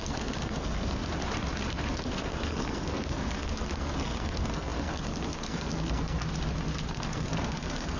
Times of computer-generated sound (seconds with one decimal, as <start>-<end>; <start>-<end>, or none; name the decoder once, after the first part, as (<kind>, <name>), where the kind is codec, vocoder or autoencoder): 0.0-1.0 (codec, SNAC); 2.0-6.2; 6.9-8.0